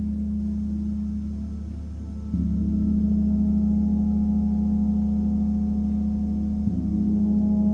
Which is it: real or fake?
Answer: real